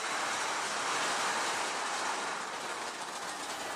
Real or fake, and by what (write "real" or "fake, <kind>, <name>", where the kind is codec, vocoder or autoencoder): real